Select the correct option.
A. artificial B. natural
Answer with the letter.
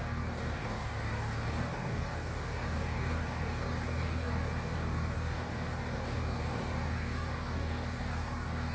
A